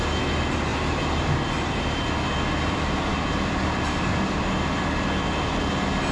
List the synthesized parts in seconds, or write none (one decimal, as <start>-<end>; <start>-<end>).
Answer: 0.7-2.1

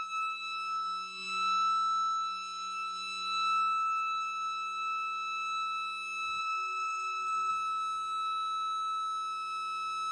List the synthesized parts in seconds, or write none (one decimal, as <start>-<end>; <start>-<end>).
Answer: 6.4-7.5

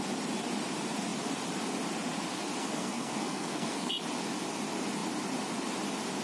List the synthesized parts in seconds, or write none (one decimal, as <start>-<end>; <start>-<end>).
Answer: 2.6-3.9